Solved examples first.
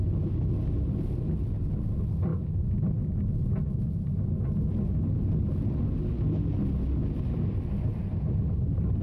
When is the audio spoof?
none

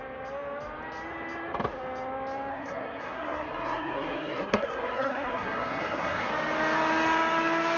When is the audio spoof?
2.5-6.3

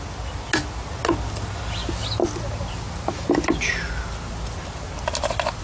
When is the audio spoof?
none

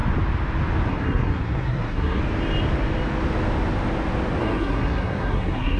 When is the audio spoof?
0.9-2.2; 4.4-5.8